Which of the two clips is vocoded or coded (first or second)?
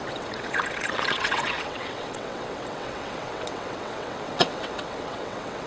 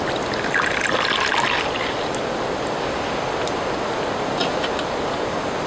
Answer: first